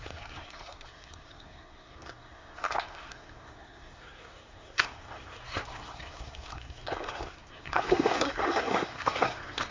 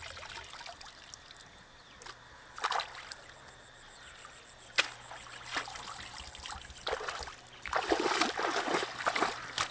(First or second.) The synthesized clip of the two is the first